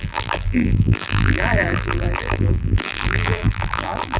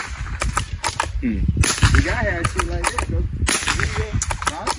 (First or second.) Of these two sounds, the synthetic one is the first